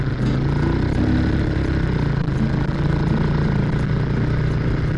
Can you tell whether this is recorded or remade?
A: recorded